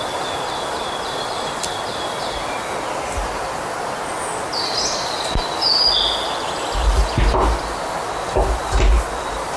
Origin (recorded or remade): recorded